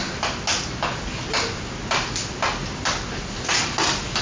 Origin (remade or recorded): recorded